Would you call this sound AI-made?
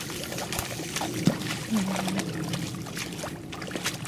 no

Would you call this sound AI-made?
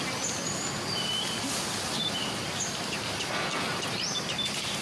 no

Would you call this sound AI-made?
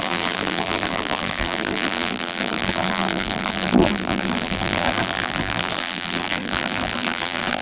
yes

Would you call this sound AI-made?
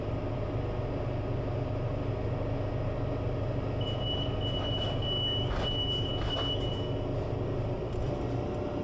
no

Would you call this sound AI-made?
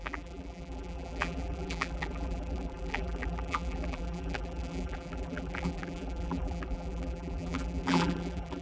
yes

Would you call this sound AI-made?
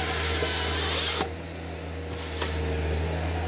no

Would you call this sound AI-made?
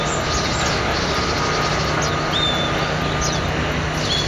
no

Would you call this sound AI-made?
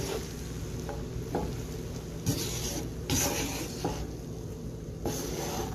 no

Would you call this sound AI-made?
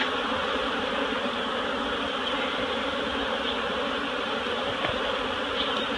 no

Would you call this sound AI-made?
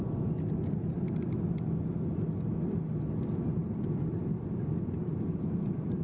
no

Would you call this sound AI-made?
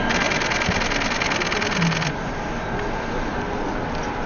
no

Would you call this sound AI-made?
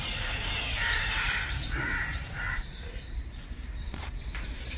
yes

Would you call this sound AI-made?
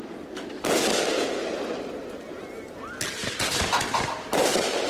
no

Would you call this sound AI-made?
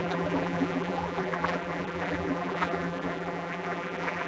yes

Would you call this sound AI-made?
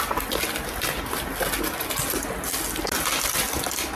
no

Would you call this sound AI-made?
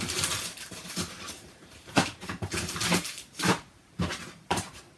yes